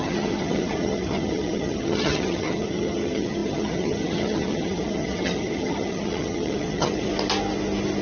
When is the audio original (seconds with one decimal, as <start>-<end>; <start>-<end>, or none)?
7.1-8.0